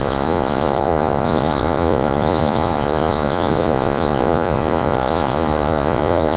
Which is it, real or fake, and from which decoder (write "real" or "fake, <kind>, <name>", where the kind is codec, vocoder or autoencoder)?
fake, vocoder, Vocos